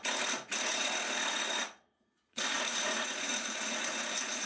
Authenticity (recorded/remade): remade